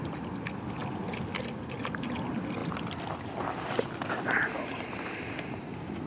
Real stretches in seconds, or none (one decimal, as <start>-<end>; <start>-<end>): 0.0-6.1

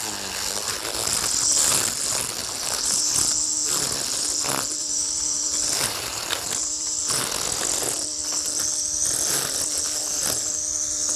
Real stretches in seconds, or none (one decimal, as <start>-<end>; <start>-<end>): 0.0-2.4; 3.1-4.8; 7.0-11.2

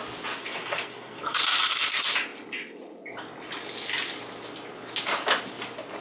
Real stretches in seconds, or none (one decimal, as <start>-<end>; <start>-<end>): 0.0-0.4; 1.4-6.0